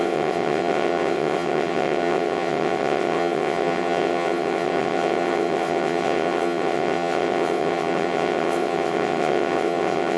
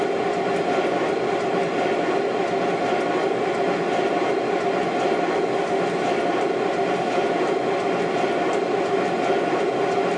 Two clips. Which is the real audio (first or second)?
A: second